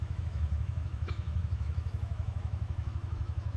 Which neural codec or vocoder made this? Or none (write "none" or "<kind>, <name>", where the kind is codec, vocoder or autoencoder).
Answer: autoencoder, DAC-VAE